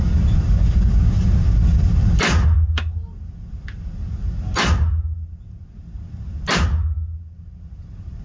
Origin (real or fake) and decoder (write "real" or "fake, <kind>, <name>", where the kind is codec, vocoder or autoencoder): real